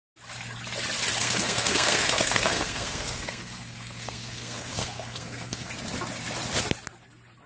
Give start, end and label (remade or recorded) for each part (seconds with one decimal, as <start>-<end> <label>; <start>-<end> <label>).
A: 0.0-1.2 recorded; 1.2-5.7 remade; 5.7-7.5 recorded